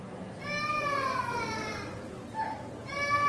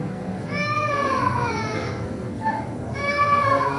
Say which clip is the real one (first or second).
first